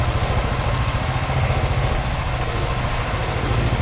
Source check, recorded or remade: recorded